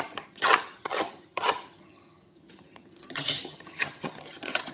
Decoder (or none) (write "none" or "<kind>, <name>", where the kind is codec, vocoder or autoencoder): vocoder, HiFi-GAN